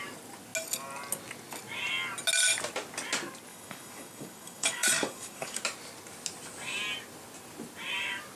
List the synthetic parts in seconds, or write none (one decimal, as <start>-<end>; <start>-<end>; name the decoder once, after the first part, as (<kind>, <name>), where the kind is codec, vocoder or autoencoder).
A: 3.5-5.6 (codec, DAC)